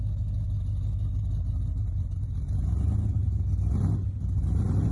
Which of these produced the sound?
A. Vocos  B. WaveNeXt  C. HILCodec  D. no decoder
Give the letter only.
D